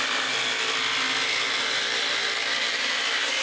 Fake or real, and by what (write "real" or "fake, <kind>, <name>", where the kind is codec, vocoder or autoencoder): real